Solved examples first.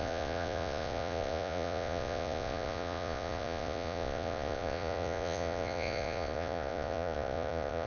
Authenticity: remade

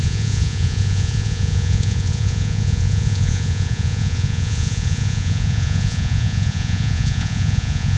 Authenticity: remade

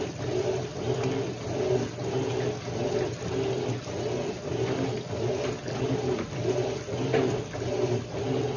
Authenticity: recorded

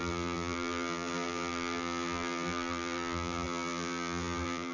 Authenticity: remade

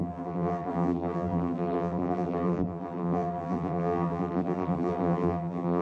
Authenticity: remade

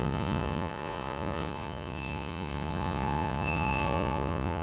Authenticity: remade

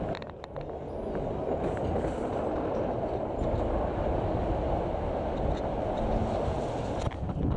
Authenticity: recorded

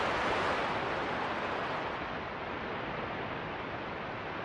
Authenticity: recorded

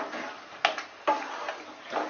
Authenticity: recorded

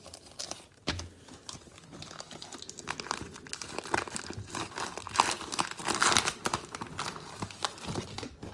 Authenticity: recorded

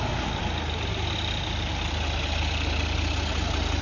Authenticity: recorded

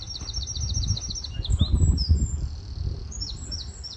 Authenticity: recorded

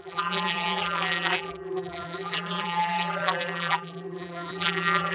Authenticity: remade